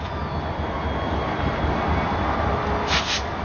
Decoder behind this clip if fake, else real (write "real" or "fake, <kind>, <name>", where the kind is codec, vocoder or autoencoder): real